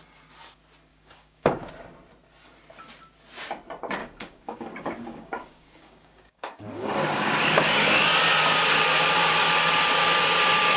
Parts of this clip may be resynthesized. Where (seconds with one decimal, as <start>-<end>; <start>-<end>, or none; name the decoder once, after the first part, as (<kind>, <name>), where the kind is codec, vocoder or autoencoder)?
0.9-1.7 (codec, DAC); 4.0-8.2